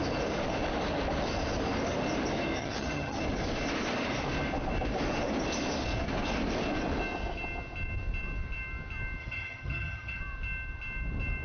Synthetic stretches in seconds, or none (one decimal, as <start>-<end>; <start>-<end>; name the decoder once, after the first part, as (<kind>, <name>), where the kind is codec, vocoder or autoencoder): 2.6-3.2 (vocoder, HiFi-GAN); 9.2-10.2